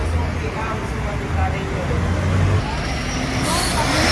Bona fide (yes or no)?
yes